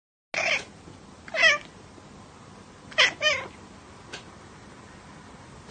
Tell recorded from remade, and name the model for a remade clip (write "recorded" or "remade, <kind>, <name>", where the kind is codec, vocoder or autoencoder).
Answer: recorded